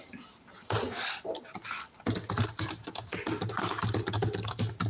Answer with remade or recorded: recorded